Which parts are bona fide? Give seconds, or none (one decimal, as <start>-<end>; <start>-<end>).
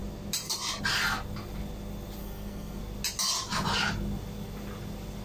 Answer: 0.0-2.2; 2.8-5.2